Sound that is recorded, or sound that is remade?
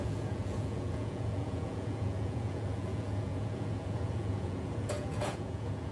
remade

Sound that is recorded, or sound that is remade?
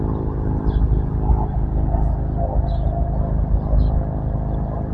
recorded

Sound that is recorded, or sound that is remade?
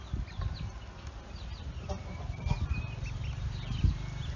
recorded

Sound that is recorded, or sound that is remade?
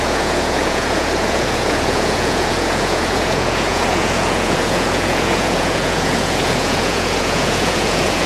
remade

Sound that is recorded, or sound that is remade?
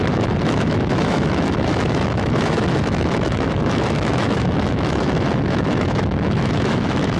remade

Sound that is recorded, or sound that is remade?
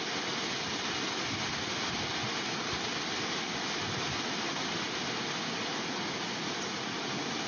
recorded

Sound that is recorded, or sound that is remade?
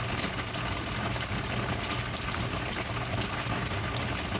recorded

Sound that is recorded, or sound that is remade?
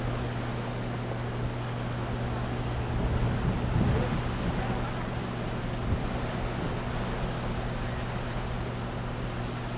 recorded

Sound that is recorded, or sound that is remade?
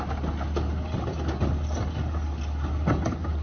recorded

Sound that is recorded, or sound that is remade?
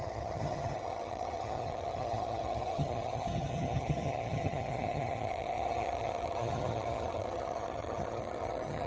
remade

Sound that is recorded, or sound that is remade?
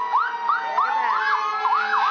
recorded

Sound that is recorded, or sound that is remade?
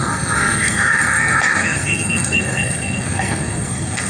remade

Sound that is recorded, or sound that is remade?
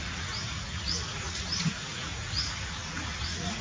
remade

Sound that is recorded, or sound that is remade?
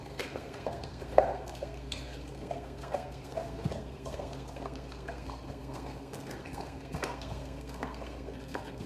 remade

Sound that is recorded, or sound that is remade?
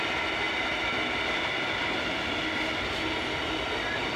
recorded